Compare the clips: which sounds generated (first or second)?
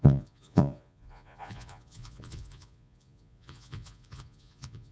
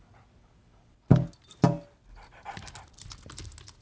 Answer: first